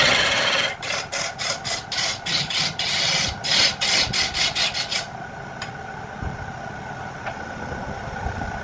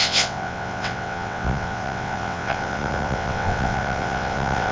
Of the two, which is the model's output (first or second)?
second